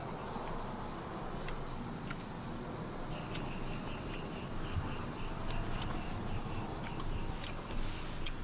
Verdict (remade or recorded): recorded